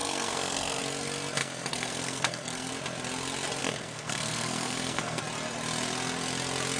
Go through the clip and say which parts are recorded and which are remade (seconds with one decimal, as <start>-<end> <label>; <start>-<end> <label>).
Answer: 0.0-0.8 remade; 0.8-1.4 recorded; 1.4-2.7 remade; 2.7-3.6 recorded; 3.6-5.2 remade; 5.2-6.8 recorded